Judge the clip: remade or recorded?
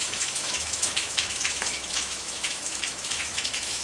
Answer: remade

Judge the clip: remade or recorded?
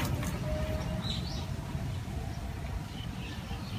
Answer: recorded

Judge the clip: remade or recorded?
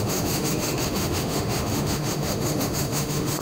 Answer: remade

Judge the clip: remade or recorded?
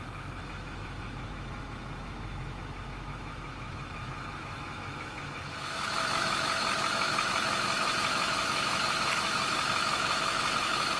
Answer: remade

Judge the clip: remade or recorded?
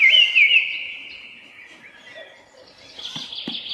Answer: recorded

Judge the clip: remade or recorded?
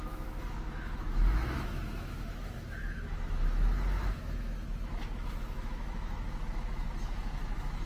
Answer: remade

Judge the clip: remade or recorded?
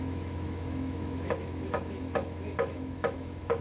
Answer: remade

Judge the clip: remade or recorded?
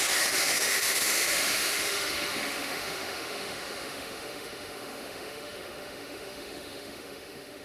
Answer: remade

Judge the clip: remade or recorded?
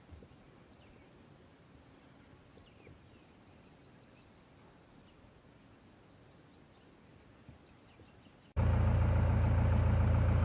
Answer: recorded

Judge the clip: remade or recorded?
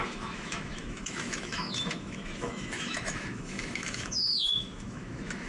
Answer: remade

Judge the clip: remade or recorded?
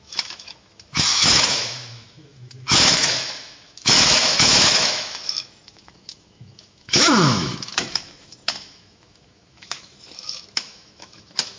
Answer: remade